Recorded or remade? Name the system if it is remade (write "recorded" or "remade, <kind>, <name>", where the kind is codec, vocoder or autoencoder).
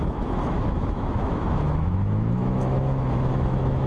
remade, autoencoder, DAC-VAE